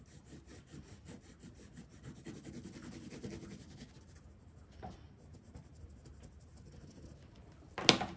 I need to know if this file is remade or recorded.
recorded